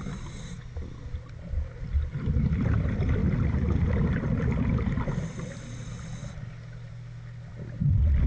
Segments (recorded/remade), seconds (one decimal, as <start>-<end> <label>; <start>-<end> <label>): 0.0-8.3 recorded